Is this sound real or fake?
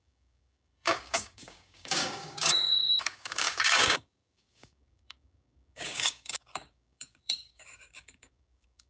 fake